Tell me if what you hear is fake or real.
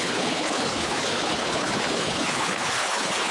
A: fake